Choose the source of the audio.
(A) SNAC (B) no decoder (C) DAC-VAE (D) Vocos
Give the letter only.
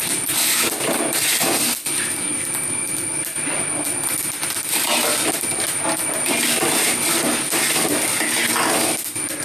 B